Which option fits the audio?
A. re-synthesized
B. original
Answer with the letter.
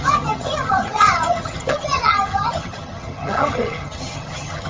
A